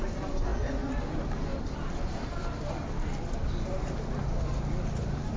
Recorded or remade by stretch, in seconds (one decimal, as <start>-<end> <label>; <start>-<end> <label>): 0.0-1.5 recorded; 1.5-2.4 remade; 2.4-5.4 recorded